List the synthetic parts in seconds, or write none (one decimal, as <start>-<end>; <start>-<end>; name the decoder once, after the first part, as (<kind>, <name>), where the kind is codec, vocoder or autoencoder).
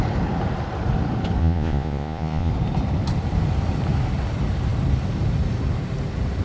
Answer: 1.4-2.5 (vocoder, Vocos)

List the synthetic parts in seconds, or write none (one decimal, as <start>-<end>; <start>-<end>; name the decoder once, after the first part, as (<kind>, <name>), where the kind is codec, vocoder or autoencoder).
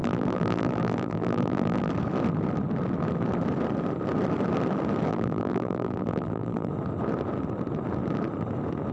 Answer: 0.0-1.9 (vocoder, BigVGAN v2); 5.1-6.7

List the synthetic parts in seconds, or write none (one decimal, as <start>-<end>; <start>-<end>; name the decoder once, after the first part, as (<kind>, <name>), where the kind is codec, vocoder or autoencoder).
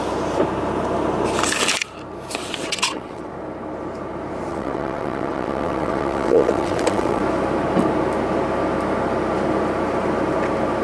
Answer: 2.4-3.3 (vocoder, WaveNeXt); 4.5-7.2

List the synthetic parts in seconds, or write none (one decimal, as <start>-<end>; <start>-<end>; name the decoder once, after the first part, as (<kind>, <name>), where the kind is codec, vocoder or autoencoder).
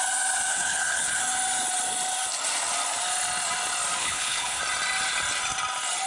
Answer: 0.5-1.2 (codec, HILCodec); 4.0-4.6